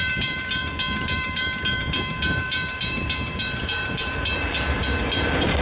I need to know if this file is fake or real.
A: fake